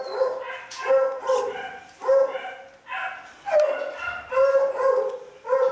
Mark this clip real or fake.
real